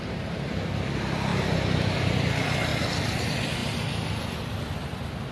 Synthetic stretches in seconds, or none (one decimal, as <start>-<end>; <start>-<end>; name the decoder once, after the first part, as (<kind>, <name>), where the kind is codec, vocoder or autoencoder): 1.3-2.3 (vocoder, BigVGAN v2)